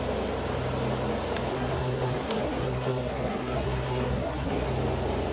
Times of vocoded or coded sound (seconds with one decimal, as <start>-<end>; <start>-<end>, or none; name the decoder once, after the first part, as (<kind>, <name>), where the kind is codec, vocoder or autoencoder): 1.5-4.7 (codec, SNAC)